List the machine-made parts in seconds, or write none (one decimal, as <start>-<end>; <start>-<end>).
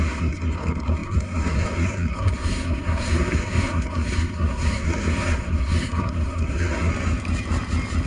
0.0-6.9